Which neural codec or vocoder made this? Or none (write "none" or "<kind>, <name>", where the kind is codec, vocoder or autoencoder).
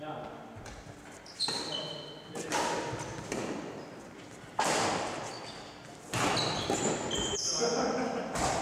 none